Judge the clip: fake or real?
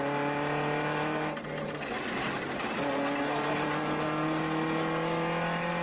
real